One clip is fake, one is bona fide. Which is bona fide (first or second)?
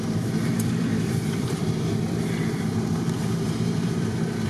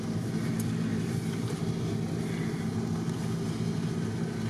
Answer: second